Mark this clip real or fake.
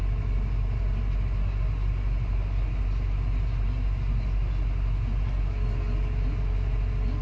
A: real